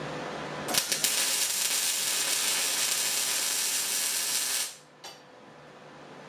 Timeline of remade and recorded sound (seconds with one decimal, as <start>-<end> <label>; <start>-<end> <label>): 0.0-1.0 recorded; 1.0-1.6 remade; 1.6-6.3 recorded

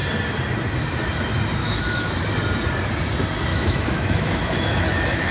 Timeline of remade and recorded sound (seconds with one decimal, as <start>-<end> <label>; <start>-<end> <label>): 0.0-1.6 recorded; 1.6-2.1 remade; 2.1-3.5 recorded; 3.5-5.3 remade

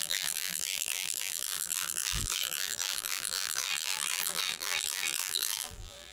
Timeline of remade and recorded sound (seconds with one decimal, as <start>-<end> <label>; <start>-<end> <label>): 0.0-6.1 remade

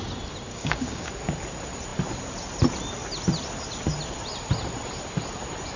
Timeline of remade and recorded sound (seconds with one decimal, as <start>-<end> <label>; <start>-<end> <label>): 0.0-0.5 recorded; 0.5-1.1 remade; 1.1-5.8 recorded

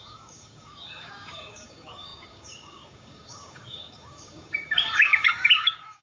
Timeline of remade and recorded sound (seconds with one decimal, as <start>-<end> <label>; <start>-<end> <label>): 0.0-6.0 remade

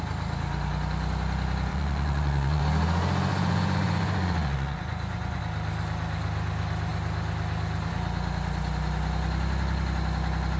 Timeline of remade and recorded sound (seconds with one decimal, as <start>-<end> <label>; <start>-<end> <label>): 0.0-1.7 recorded; 1.7-2.6 remade; 2.6-3.3 recorded; 3.3-5.4 remade; 5.4-10.6 recorded

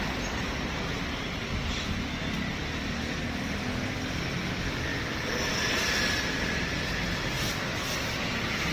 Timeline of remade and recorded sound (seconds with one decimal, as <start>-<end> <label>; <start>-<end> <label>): 0.0-4.9 remade; 4.9-5.5 recorded; 5.5-8.7 remade

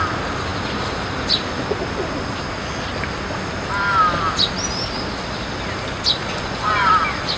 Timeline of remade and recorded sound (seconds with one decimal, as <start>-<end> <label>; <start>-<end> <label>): 0.0-6.2 recorded; 6.2-6.9 remade; 6.9-7.4 recorded